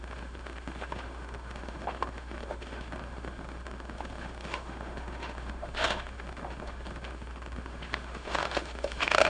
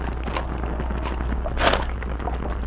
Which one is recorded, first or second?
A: second